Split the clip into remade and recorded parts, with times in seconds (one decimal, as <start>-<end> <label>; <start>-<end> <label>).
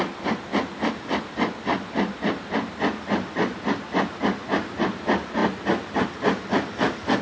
0.0-7.2 recorded